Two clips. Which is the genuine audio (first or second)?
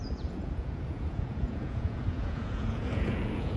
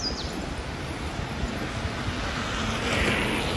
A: second